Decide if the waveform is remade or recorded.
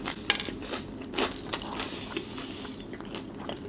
recorded